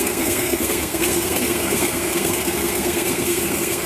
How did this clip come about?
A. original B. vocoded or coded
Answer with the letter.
B